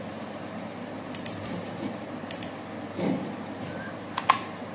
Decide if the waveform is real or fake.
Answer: real